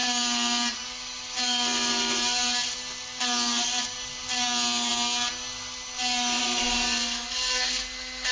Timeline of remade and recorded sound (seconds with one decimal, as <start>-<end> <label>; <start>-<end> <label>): 0.0-8.3 recorded

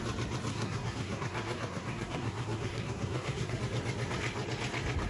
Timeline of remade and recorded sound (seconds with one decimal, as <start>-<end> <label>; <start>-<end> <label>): 0.0-0.5 recorded; 0.5-3.6 remade; 3.6-5.1 recorded

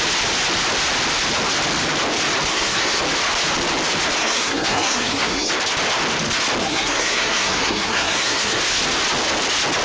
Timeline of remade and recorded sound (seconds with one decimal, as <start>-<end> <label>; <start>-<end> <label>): 0.0-2.5 recorded; 2.5-3.0 remade; 3.0-4.2 recorded; 4.2-5.5 remade; 5.5-6.6 recorded; 6.6-8.6 remade; 8.6-9.8 recorded

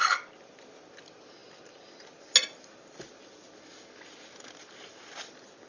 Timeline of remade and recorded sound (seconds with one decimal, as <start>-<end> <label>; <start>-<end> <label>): 0.0-5.7 recorded

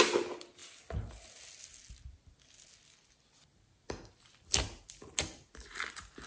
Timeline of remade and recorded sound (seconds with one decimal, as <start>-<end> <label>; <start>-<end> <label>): 0.0-6.3 recorded

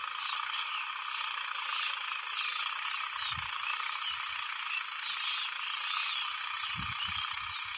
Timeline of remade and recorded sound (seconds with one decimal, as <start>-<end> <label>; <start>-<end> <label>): 0.0-7.8 recorded